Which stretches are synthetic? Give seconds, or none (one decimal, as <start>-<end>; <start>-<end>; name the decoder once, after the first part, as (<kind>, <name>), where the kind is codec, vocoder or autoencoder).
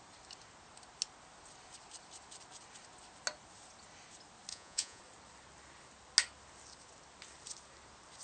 4.5-5.0 (vocoder, Vocos)